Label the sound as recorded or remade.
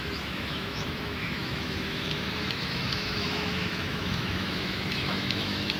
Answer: remade